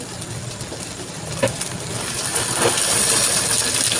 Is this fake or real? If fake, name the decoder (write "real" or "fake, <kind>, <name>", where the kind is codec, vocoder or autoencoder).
real